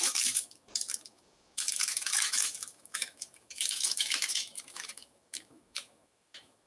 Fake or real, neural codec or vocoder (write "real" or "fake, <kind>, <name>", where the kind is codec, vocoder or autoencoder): fake, autoencoder, DAC-VAE